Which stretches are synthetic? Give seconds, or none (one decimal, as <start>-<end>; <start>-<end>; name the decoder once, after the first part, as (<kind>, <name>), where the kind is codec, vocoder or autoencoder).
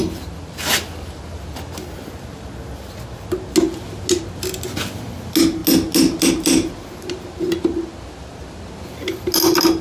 none